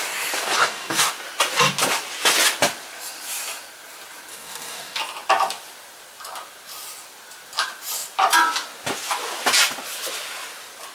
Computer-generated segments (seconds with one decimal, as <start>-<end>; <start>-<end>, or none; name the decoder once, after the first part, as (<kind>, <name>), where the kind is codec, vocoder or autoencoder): 0.6-1.1 (codec, DAC); 4.3-5.0